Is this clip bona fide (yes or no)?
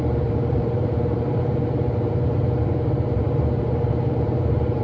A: no